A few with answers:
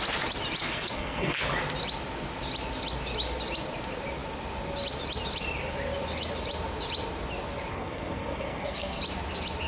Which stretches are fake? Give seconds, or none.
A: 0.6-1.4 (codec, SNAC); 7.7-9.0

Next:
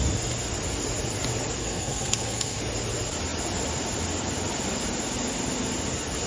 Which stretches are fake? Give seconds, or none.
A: 1.6-2.6 (codec, SNAC)